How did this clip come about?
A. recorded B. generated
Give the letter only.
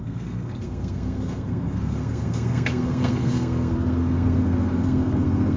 B